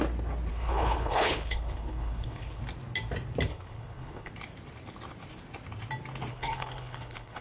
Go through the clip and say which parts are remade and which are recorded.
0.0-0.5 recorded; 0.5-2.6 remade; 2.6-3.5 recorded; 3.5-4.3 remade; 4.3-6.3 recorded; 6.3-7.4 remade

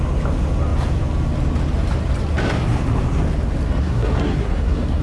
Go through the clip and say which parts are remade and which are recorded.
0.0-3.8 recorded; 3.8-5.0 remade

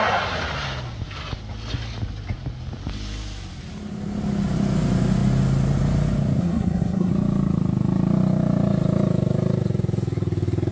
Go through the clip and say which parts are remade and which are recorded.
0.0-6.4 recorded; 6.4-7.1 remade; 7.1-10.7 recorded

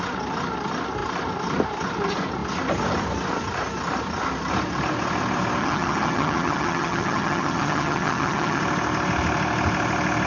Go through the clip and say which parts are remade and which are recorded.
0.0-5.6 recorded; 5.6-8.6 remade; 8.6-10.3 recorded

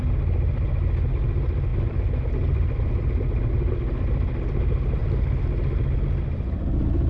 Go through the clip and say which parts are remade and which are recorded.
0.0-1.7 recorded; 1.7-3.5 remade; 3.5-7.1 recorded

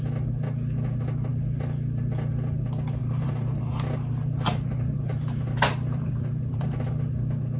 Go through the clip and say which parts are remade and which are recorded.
0.0-3.0 recorded; 3.0-6.9 remade; 6.9-7.6 recorded